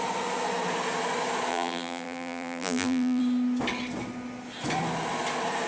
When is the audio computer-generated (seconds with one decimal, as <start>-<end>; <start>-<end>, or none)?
1.5-3.2